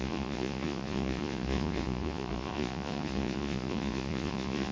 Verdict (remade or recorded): remade